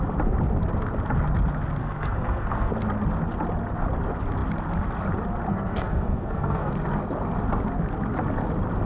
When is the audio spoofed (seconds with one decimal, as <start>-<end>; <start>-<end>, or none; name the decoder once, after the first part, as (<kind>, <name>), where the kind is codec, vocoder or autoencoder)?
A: 1.8-2.7 (codec, SNAC); 5.5-6.7